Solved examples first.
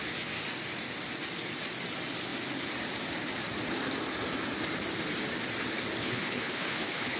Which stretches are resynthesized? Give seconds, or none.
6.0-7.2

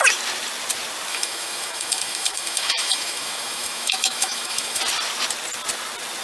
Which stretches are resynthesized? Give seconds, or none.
1.1-4.8

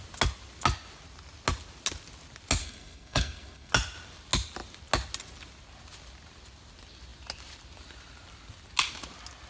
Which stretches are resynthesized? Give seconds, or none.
2.6-3.7

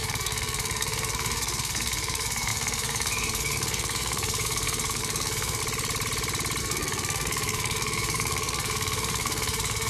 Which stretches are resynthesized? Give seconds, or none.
0.0-5.6; 6.6-9.9